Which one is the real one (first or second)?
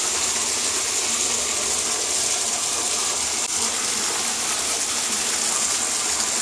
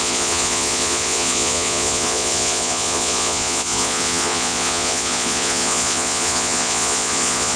first